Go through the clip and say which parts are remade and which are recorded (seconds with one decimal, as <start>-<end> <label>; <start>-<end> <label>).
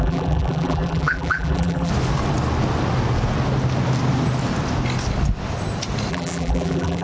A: 0.0-1.9 remade; 1.9-6.1 recorded; 6.1-7.0 remade